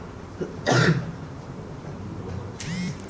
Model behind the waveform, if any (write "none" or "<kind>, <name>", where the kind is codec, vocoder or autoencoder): vocoder, BigVGAN v2